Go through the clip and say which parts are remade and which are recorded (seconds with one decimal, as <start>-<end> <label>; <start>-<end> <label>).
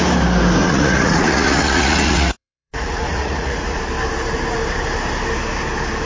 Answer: 0.0-0.6 recorded; 0.6-3.8 remade; 3.8-6.1 recorded